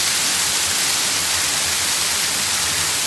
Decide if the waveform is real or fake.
real